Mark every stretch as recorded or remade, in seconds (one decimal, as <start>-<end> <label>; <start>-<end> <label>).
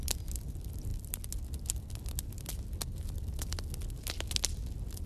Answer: 0.0-5.1 recorded